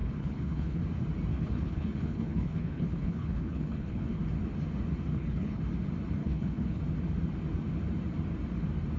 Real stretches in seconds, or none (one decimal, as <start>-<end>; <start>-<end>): 0.8-1.3; 4.2-5.1; 5.6-6.2; 6.8-9.0